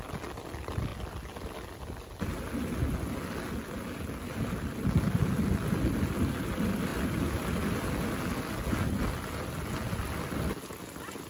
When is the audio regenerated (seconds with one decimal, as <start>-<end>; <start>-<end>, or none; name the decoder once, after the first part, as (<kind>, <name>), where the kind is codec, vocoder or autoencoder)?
none